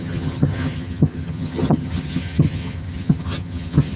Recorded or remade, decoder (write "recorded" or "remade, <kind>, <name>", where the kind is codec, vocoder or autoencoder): remade, vocoder, HiFi-GAN